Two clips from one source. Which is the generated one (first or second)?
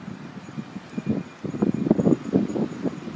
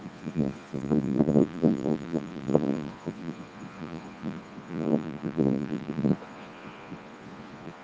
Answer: second